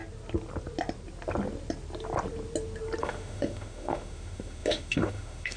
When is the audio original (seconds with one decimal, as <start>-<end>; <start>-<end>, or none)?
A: 0.0-3.0